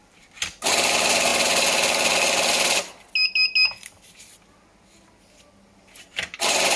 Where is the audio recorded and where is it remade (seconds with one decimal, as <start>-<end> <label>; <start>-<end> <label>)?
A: 0.0-0.9 remade; 0.9-6.8 recorded